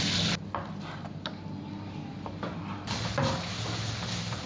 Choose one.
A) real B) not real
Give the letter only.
B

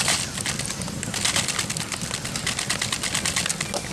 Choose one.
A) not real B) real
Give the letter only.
B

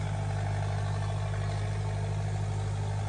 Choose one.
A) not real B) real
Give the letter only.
B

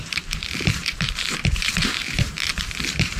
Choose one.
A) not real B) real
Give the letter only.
A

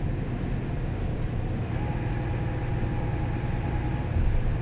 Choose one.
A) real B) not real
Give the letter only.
A